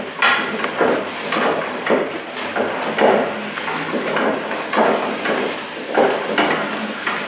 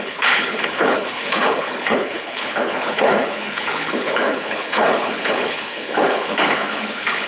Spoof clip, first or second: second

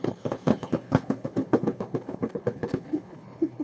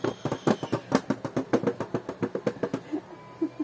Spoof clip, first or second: first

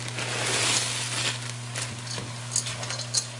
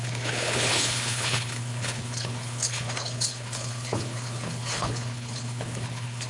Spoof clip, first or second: second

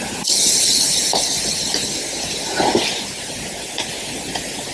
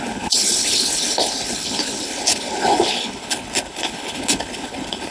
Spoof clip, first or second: second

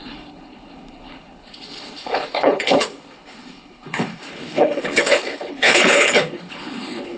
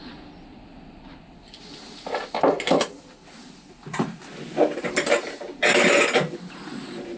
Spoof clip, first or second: first